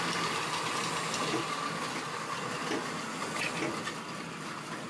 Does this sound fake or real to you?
real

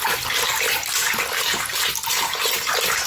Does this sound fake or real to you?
real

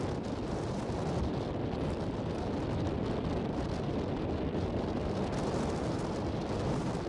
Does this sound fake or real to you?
real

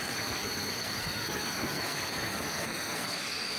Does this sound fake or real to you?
fake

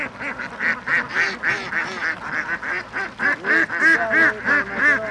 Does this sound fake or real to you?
real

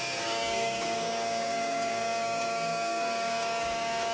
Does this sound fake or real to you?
fake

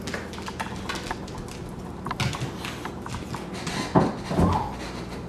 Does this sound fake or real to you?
real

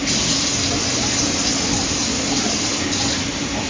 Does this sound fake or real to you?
real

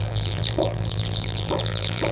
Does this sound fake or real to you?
fake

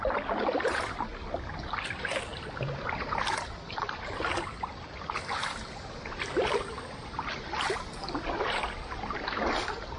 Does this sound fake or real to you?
real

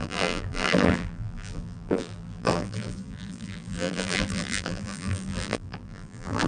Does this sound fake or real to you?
fake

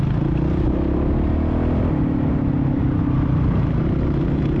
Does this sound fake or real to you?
real